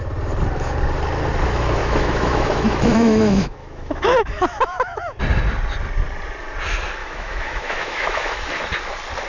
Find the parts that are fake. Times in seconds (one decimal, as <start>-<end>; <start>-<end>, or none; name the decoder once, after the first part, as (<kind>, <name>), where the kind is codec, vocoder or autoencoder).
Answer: 1.8-5.2 (autoencoder, DAC-VAE); 7.0-8.5